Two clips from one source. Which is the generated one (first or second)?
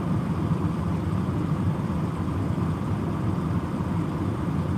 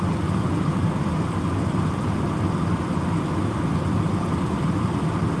first